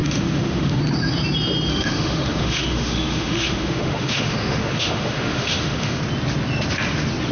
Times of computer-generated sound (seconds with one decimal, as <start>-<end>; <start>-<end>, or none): 0.0-0.8; 1.7-6.0